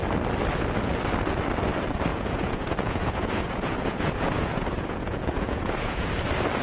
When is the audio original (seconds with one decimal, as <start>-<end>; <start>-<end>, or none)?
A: 0.0-2.1; 6.1-6.6